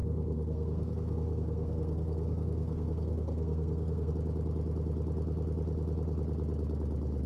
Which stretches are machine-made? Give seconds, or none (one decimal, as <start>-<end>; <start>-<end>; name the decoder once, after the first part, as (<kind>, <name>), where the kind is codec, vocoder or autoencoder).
0.0-4.1 (codec, SNAC)